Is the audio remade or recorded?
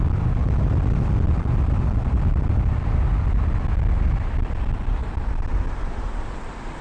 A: recorded